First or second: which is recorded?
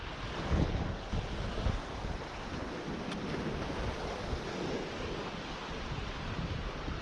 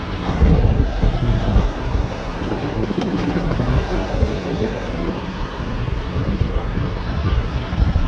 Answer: first